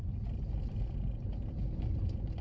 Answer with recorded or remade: recorded